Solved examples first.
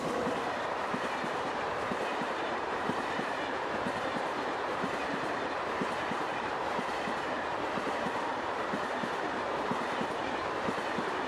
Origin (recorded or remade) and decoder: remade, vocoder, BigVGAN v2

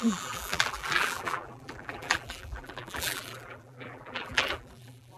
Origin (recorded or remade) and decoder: remade, vocoder, BigVGAN v2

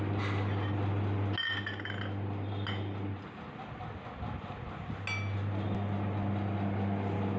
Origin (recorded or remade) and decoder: recorded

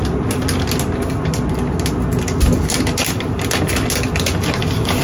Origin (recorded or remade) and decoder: recorded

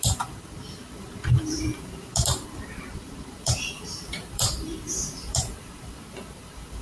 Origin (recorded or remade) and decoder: remade, vocoder, BigVGAN v2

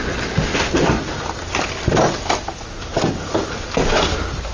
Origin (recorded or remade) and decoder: recorded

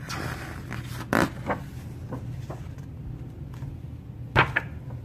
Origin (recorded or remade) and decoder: recorded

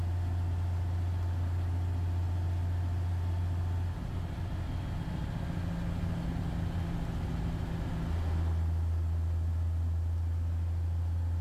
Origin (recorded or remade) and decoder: recorded